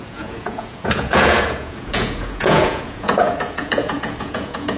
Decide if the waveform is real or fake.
fake